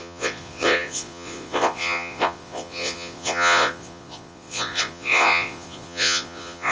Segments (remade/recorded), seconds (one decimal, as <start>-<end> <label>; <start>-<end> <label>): 0.0-6.7 remade